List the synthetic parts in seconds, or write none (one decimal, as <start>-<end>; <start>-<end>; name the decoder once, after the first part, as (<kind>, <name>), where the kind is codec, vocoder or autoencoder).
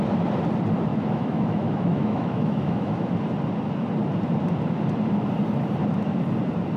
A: 0.9-3.1 (autoencoder, DAC-VAE)